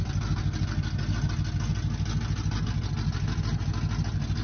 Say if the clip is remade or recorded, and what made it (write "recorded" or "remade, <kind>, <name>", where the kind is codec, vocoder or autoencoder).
recorded